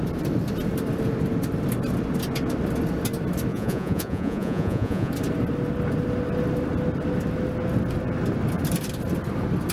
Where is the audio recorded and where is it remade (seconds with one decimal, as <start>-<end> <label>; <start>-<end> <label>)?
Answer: 0.0-3.5 recorded; 3.5-5.1 remade; 5.1-9.7 recorded